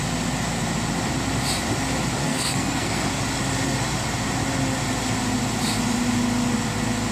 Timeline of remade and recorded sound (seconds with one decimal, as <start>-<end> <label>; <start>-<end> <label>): 0.0-2.2 recorded; 2.2-3.2 remade; 3.2-7.1 recorded